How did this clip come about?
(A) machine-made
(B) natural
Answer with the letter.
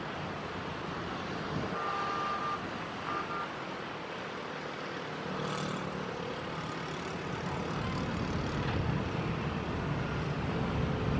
B